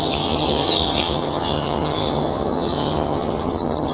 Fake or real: fake